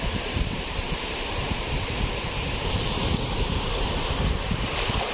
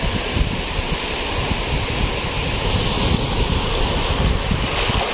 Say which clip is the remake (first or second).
first